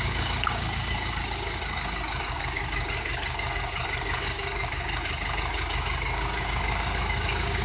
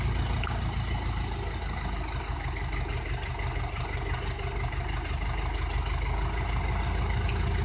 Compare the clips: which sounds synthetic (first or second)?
first